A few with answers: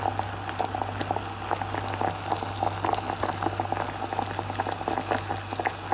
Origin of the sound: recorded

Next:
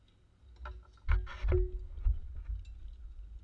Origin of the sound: recorded